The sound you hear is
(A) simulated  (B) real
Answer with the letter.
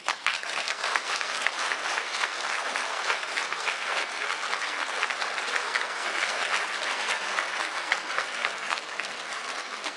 A